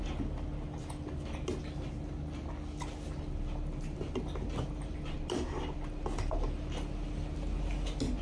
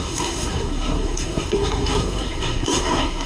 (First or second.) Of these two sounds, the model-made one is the second